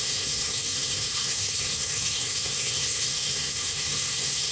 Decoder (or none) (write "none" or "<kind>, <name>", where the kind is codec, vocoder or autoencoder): codec, SNAC